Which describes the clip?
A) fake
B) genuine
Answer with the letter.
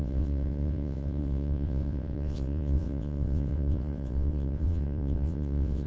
A